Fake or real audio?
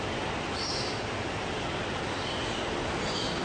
real